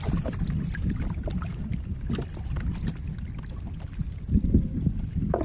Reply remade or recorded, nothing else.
recorded